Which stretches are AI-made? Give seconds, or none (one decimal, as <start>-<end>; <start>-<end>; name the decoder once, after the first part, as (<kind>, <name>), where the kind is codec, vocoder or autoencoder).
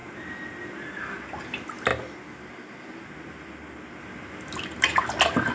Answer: none